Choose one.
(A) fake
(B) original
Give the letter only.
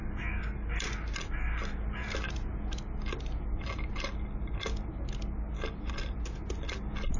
B